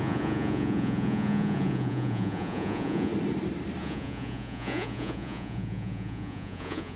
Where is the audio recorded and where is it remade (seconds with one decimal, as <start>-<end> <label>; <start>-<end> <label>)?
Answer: 0.0-3.1 remade; 3.1-3.8 recorded; 3.8-7.0 remade